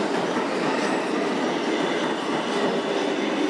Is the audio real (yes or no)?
yes